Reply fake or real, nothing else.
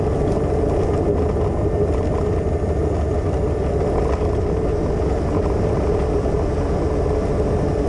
real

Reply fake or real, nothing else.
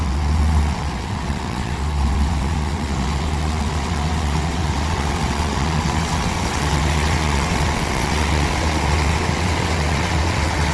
fake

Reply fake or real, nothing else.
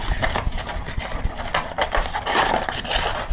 real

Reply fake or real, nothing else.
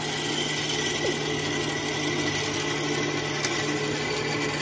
real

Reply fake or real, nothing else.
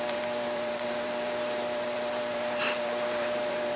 fake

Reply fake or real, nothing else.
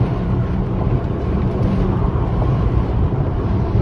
fake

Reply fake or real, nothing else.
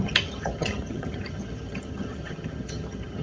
fake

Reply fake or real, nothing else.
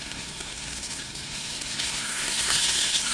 fake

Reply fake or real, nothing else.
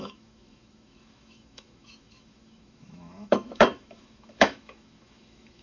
fake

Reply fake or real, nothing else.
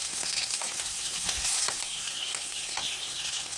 fake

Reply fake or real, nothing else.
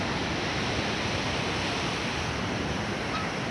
real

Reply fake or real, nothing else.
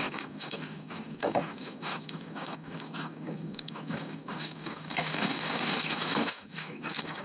fake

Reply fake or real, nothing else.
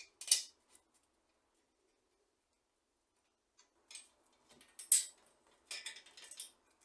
real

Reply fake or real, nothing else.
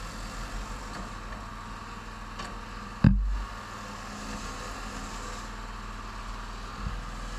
real